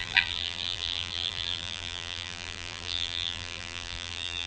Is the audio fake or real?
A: fake